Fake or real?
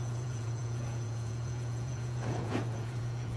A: fake